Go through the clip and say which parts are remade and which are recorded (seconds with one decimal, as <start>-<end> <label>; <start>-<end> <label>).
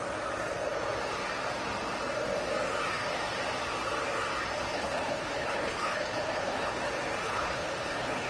0.0-4.7 recorded; 4.7-6.8 remade; 6.8-7.2 recorded; 7.2-8.3 remade